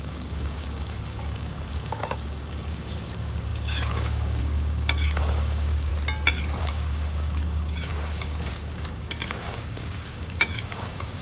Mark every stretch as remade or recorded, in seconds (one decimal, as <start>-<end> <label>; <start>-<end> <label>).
0.0-5.9 remade; 5.9-6.6 recorded; 6.6-11.2 remade